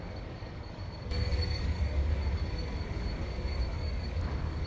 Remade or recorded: remade